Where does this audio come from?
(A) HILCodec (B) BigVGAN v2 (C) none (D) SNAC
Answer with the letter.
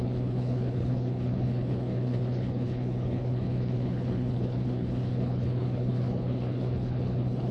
A